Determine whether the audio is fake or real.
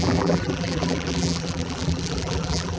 fake